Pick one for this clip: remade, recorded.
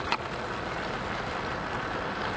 recorded